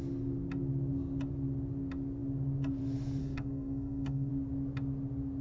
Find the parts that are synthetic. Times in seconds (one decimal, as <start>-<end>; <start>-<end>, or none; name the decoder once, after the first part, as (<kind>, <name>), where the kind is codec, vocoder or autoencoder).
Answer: 3.2-4.3 (codec, SNAC)